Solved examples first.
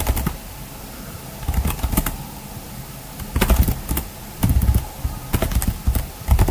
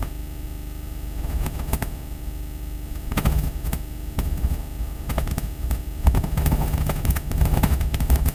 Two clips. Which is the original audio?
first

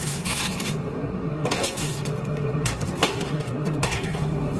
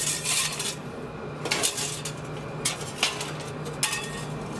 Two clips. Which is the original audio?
second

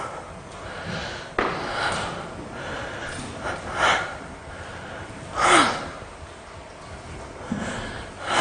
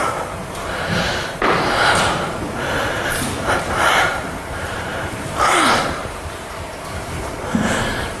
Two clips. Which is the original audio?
first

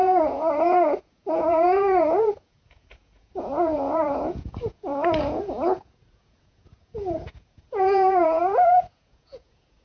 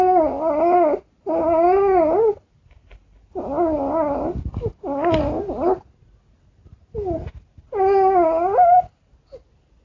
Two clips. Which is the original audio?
second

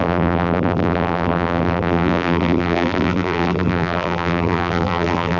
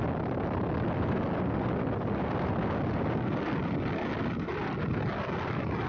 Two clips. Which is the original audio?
second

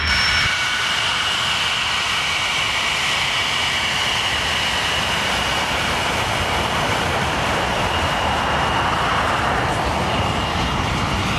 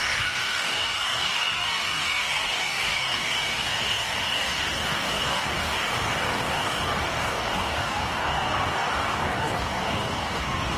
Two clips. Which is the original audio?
first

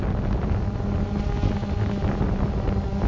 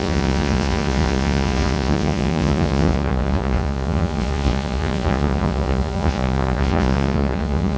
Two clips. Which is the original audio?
first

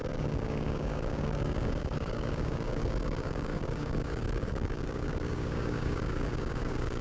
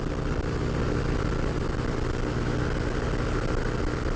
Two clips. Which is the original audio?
second